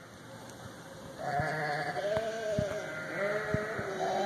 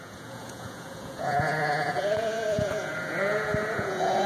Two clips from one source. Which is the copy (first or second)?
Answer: second